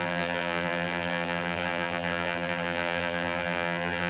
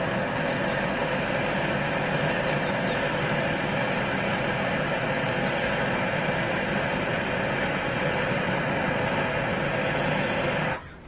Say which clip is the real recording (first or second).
second